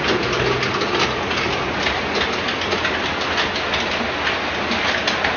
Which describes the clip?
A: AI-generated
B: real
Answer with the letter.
B